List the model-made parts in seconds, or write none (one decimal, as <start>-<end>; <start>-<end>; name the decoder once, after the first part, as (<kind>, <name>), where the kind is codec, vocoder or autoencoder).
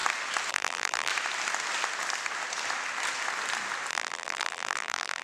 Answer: 0.5-1.1 (vocoder, BigVGAN v2); 3.9-5.2